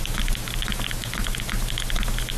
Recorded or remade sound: recorded